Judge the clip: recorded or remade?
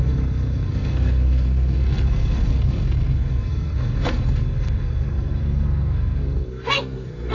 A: remade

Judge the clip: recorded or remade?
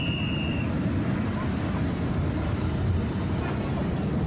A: recorded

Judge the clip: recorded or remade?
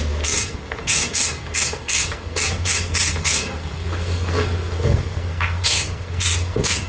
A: remade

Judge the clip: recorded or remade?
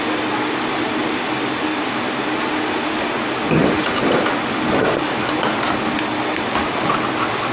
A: recorded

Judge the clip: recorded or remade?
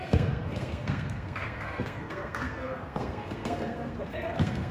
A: remade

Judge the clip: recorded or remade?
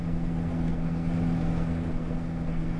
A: remade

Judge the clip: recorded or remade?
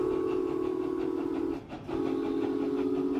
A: recorded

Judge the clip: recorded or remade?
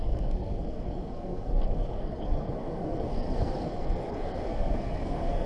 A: remade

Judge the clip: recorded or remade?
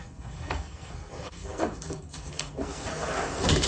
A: remade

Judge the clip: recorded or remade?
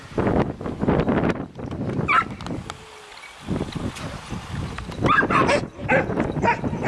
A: recorded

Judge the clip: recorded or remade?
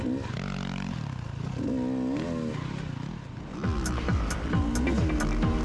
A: recorded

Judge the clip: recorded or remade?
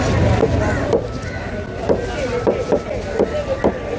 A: recorded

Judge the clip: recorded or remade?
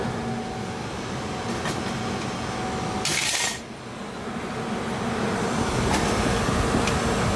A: recorded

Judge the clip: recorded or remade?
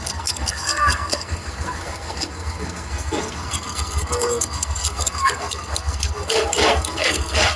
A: remade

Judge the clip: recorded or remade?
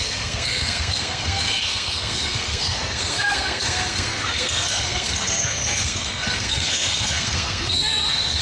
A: remade